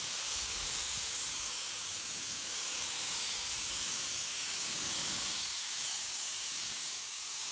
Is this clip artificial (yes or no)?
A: yes